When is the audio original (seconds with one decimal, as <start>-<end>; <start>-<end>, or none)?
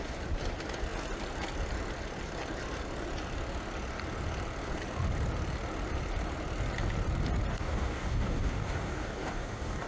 0.0-7.5